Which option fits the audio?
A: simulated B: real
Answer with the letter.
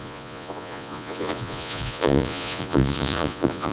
A